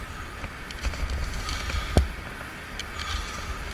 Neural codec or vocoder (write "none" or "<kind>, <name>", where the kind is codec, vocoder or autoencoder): none